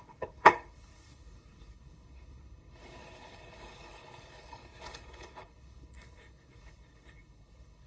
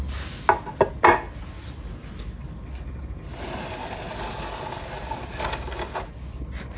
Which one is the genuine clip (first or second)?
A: second